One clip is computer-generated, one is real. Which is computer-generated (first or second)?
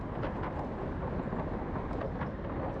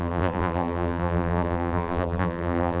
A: second